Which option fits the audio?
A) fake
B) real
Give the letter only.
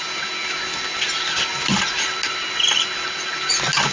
B